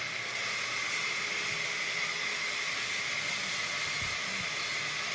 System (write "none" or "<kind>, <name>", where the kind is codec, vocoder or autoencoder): none